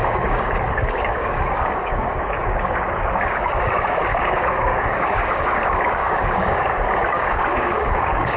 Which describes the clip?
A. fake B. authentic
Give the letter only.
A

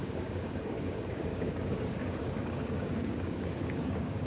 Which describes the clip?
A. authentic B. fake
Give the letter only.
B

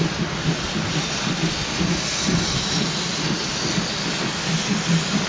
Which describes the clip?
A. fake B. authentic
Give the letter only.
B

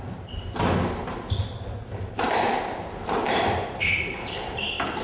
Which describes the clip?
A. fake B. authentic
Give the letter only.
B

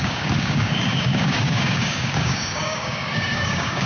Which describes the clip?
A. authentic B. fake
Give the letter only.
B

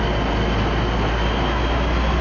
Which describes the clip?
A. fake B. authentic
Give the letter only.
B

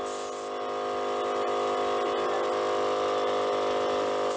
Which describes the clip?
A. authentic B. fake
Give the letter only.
A